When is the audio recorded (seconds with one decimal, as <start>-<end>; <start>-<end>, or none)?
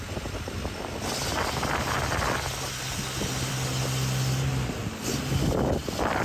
0.0-6.2